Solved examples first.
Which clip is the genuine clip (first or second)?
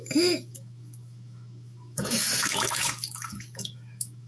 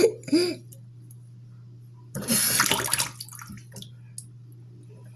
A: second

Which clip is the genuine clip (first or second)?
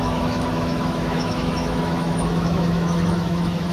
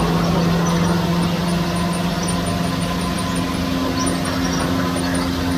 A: second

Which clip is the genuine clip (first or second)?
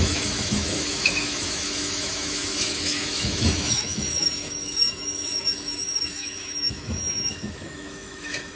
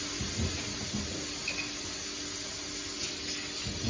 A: second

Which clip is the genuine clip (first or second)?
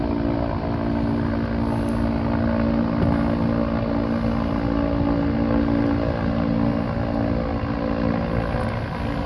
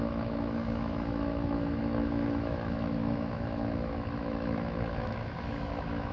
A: first